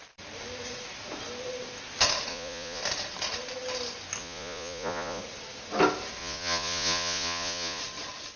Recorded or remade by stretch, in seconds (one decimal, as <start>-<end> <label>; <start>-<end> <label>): 0.0-2.3 recorded; 2.3-2.8 remade; 2.8-4.2 recorded; 4.2-5.2 remade; 5.2-6.2 recorded; 6.2-7.8 remade; 7.8-8.4 recorded